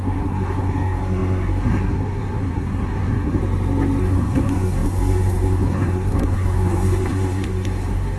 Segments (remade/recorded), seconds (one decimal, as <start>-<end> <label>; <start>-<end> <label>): 0.0-3.4 remade; 3.4-4.0 recorded; 4.0-8.2 remade